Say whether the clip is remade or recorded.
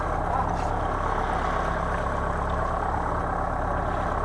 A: recorded